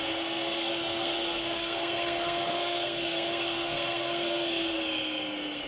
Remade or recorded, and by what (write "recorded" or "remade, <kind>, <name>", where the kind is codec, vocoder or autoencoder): remade, codec, SNAC